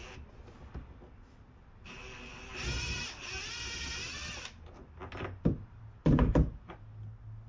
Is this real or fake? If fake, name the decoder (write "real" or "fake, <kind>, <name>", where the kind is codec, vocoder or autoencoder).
real